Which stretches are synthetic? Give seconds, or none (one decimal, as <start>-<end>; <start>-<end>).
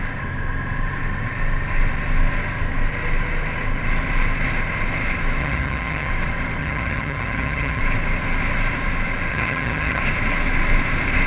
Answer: 5.4-6.1; 6.6-7.8; 9.3-10.0